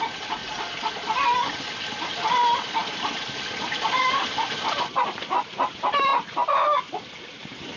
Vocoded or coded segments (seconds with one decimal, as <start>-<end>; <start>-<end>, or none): none